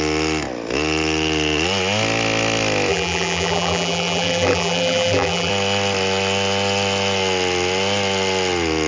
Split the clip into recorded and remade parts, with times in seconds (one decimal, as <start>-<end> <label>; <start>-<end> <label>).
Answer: 0.0-2.9 recorded; 2.9-5.5 remade; 5.5-8.9 recorded